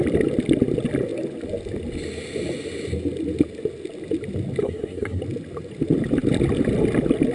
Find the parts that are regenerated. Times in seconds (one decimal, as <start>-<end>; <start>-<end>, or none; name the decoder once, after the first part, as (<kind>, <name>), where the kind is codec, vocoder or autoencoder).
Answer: 4.6-5.2 (codec, SNAC)